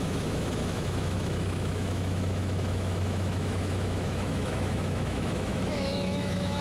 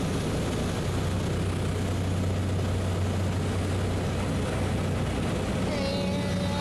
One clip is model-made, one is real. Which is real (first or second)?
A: second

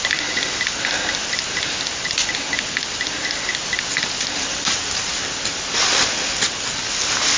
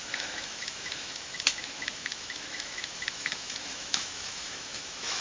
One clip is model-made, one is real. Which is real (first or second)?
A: first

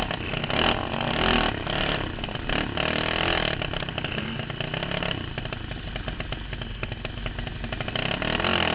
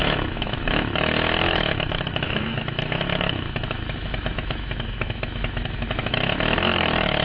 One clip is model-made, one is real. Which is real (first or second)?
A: first